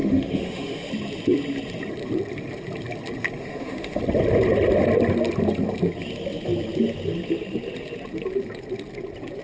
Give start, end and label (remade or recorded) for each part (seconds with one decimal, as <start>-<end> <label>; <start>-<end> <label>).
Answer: 0.0-0.9 remade; 0.9-3.4 recorded; 3.4-4.0 remade; 4.0-9.4 recorded